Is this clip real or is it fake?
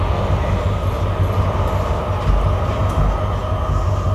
real